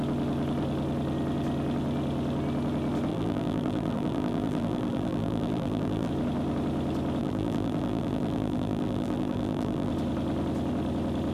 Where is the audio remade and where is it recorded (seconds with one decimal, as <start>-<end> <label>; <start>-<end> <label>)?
0.0-3.1 recorded; 3.1-6.1 remade; 6.1-7.2 recorded; 7.2-9.9 remade; 9.9-11.3 recorded